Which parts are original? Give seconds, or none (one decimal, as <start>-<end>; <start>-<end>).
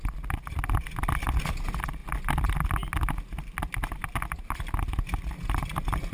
0.0-6.1